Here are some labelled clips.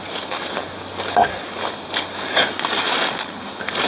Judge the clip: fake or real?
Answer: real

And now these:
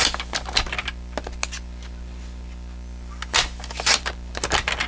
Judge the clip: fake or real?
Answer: real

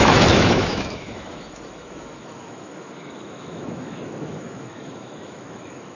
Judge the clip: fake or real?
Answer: fake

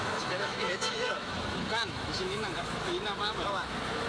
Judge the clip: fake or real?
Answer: fake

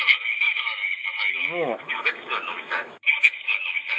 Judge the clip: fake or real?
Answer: fake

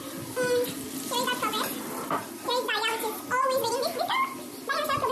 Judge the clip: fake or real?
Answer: real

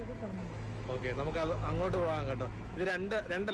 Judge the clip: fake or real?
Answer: fake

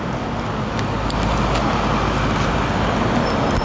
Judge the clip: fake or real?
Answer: real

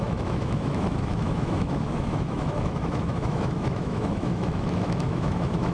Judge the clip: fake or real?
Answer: fake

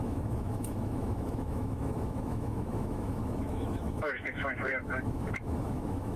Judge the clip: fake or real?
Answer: fake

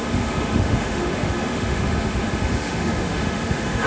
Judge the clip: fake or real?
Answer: fake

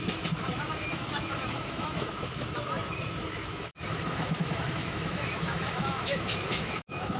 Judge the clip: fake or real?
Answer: fake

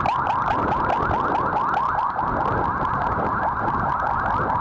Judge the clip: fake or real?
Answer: real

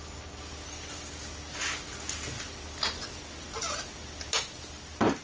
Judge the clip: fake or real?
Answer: real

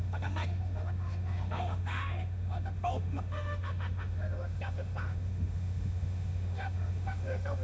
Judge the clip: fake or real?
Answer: fake